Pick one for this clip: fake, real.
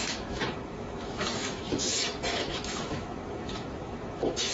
fake